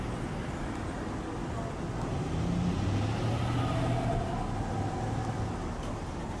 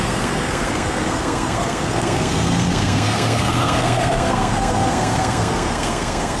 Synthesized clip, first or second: second